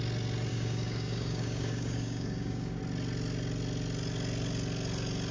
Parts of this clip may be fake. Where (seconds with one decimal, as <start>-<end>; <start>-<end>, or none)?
0.5-2.8

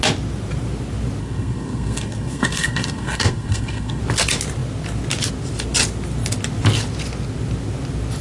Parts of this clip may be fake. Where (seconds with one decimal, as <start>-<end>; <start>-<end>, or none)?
1.2-4.0

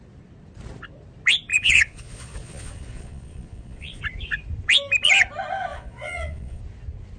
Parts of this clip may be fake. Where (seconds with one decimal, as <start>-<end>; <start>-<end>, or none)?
1.5-4.0; 5.7-6.6